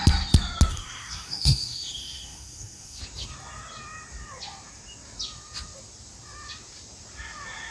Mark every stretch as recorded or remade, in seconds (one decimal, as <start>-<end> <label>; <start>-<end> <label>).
0.0-0.7 recorded; 0.7-3.0 remade; 3.0-7.7 recorded